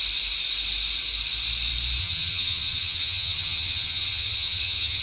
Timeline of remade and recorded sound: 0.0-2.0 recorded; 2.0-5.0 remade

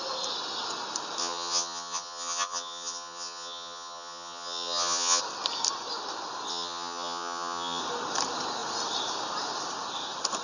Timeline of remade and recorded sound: 0.0-1.2 recorded; 1.2-5.2 remade; 5.2-6.5 recorded; 6.5-7.8 remade; 7.8-10.4 recorded

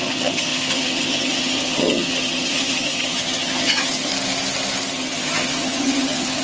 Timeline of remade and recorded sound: 0.0-4.1 remade; 4.1-4.9 recorded; 4.9-6.4 remade

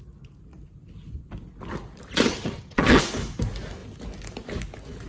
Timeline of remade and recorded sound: 0.0-2.3 recorded; 2.3-3.0 remade; 3.0-5.1 recorded

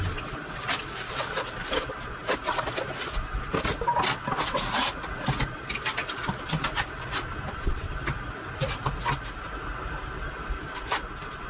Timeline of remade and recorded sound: 0.0-11.5 recorded